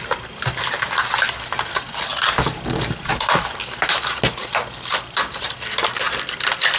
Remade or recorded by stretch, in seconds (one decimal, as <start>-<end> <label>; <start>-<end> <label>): 0.0-6.8 recorded